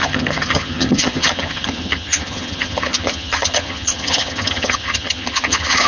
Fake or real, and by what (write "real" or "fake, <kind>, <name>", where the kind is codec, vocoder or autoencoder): fake, vocoder, HiFi-GAN